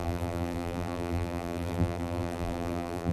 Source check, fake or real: fake